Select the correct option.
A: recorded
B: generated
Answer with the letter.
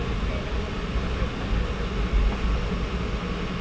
A